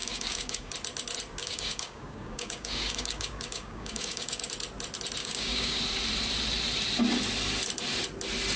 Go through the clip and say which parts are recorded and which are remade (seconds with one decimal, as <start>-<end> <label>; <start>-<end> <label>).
0.0-0.7 remade; 0.7-1.4 recorded; 1.4-4.5 remade; 4.5-5.2 recorded; 5.2-5.8 remade; 5.8-8.6 recorded